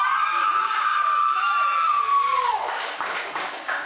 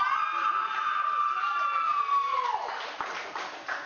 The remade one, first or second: first